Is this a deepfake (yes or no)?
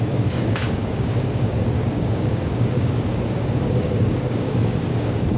yes